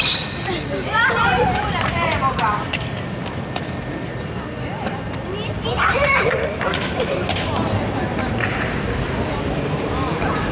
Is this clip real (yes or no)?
no